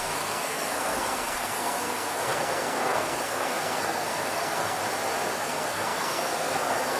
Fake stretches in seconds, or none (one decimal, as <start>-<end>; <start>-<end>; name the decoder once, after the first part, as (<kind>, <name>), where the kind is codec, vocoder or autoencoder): 0.0-4.8 (codec, SNAC); 5.4-7.0